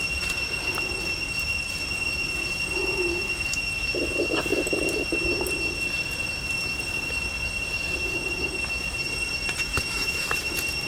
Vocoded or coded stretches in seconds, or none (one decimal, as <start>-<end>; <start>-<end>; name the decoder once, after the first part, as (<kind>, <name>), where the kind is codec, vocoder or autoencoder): 9.7-10.5 (autoencoder, DAC-VAE)